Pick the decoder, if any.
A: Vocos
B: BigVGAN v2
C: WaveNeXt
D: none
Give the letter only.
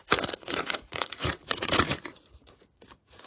A